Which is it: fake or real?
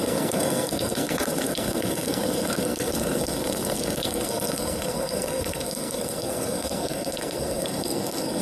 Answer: fake